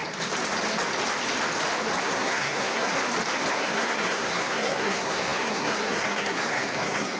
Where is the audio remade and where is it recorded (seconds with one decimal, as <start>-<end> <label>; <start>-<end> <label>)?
0.0-2.0 recorded; 2.0-2.9 remade; 2.9-3.5 recorded; 3.5-7.2 remade